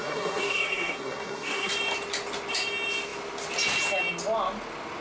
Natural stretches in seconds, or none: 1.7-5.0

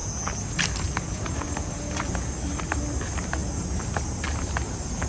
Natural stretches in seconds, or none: 0.0-5.1

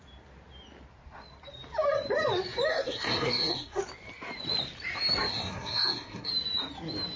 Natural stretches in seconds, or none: 0.0-2.7; 3.8-5.3; 6.3-7.2